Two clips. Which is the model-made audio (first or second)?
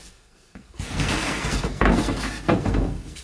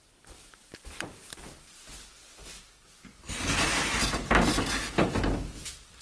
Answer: first